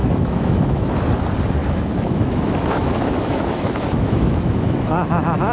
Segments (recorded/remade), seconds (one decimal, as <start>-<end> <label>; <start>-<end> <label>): 0.0-0.9 remade; 0.9-1.6 recorded; 1.6-4.9 remade; 4.9-5.5 recorded